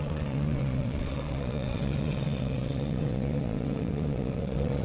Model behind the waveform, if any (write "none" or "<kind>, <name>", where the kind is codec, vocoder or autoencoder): vocoder, WaveNeXt